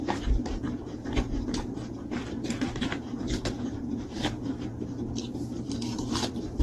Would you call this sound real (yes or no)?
no